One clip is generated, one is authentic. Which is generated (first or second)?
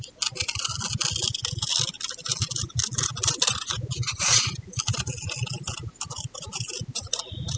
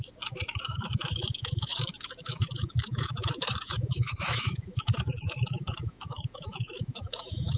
second